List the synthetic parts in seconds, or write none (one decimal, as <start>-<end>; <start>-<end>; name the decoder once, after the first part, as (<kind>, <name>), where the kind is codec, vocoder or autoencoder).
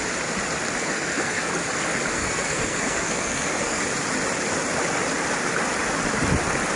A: 0.8-1.5 (codec, SNAC); 2.1-3.8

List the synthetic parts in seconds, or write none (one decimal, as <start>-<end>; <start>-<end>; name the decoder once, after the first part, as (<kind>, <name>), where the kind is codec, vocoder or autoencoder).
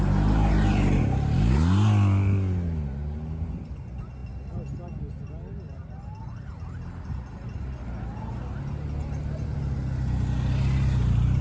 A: none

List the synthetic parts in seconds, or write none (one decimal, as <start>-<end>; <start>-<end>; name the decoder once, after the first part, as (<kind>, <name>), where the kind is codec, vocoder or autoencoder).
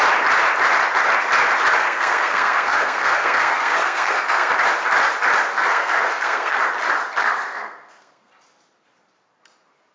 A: 1.8-4.5 (codec, SNAC); 5.5-6.6; 7.2-8.3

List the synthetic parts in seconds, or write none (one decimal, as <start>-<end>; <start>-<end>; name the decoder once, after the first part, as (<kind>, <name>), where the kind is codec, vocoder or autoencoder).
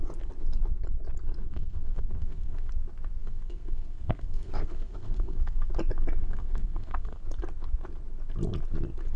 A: 1.4-2.7 (codec, SNAC); 3.2-5.7; 6.2-7.2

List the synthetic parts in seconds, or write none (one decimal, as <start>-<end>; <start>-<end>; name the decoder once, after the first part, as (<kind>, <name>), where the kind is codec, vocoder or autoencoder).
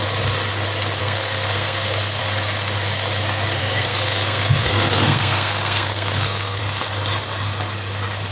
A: 1.0-2.2 (codec, SNAC); 3.6-6.6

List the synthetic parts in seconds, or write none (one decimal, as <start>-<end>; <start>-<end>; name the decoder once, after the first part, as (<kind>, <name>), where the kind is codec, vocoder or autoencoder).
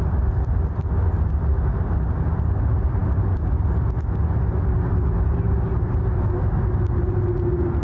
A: none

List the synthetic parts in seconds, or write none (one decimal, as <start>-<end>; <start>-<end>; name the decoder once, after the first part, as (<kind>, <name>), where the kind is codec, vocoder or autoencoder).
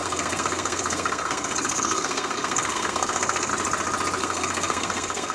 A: 0.0-3.5 (codec, SNAC); 4.2-5.3